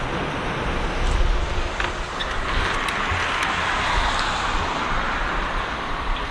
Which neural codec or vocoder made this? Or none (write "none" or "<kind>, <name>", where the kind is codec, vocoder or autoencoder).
none